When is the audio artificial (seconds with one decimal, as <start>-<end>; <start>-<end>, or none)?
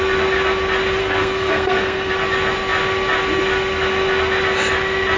1.0-2.1